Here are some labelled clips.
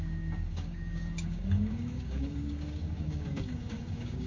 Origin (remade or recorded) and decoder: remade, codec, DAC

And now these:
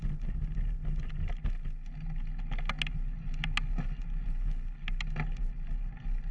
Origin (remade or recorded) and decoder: recorded